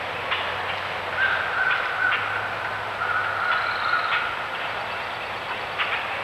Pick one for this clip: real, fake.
real